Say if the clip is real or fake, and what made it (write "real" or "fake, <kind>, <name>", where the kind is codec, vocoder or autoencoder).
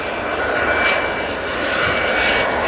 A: real